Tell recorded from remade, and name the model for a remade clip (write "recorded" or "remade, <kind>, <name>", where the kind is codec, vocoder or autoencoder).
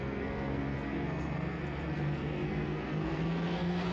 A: remade, codec, SNAC